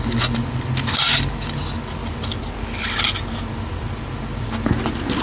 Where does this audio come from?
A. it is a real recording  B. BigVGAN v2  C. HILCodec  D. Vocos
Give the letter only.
A